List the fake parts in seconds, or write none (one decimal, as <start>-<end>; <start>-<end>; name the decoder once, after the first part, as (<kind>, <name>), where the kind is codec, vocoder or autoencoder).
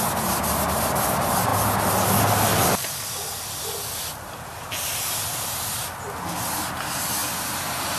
none